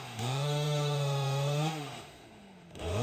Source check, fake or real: fake